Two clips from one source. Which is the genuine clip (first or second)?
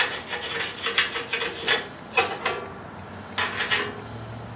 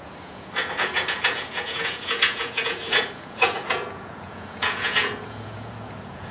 first